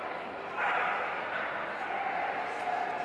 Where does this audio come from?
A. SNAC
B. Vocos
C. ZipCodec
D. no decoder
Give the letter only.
D